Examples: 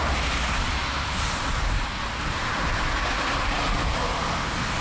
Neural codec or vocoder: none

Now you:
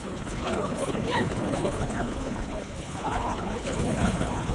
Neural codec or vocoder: codec, HILCodec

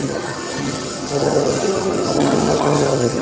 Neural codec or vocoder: vocoder, HiFi-GAN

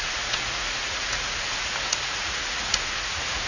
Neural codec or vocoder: vocoder, Vocos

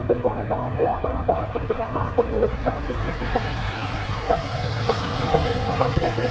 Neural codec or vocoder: codec, SNAC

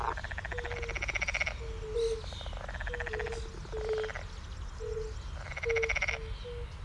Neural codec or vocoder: none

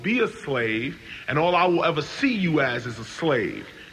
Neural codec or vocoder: none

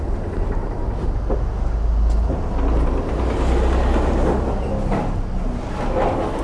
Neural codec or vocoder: none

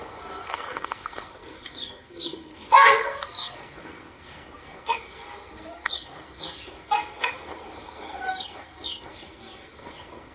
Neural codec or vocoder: codec, SNAC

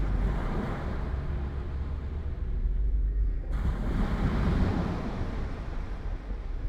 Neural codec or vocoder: vocoder, BigVGAN v2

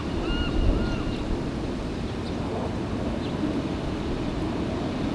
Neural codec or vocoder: none